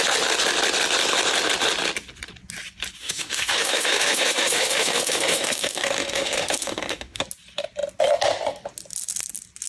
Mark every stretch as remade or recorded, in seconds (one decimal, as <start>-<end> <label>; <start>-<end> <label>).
0.0-3.0 recorded; 3.0-7.2 remade; 7.2-9.7 recorded

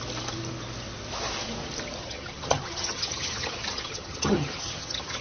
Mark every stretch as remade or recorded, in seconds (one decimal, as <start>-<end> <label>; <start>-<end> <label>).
0.0-2.0 recorded; 2.0-5.2 remade

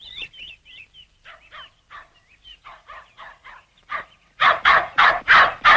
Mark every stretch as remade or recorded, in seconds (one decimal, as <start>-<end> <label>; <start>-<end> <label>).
0.0-2.5 recorded; 2.5-5.1 remade; 5.1-5.8 recorded

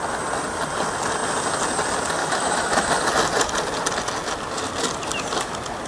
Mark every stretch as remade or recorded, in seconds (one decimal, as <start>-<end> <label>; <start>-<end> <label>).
0.0-2.2 recorded; 2.2-2.9 remade; 2.9-5.9 recorded

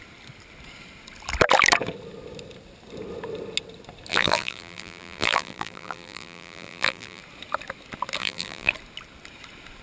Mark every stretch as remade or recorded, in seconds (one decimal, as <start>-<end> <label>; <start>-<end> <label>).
0.0-4.1 recorded; 4.1-7.2 remade; 7.2-8.2 recorded; 8.2-8.7 remade; 8.7-9.8 recorded

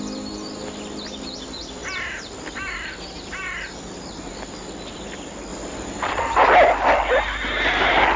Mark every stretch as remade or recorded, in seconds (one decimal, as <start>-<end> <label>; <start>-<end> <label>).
0.0-8.2 recorded

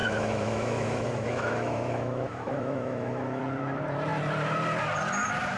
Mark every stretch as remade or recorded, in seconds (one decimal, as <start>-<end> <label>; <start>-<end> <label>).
0.0-3.4 remade; 3.4-5.6 recorded

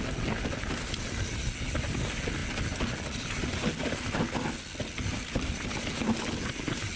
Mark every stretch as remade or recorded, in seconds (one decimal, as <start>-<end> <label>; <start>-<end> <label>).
0.0-7.0 recorded